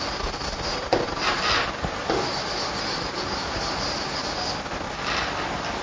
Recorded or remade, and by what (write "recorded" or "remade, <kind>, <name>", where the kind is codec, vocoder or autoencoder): recorded